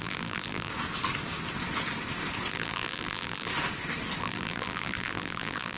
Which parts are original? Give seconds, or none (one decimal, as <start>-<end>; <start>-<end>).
0.7-2.5; 3.5-4.2